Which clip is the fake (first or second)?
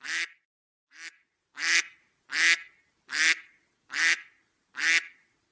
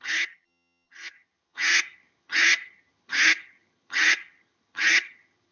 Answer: second